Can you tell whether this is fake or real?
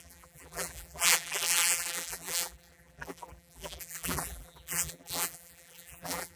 fake